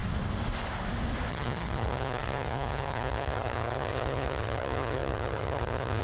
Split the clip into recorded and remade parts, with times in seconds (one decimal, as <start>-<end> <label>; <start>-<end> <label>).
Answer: 0.0-1.3 recorded; 1.3-6.0 remade